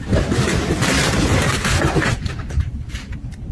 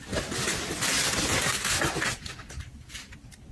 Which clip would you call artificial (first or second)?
first